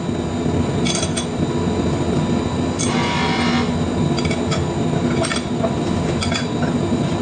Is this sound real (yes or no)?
yes